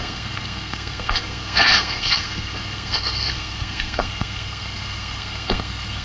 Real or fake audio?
fake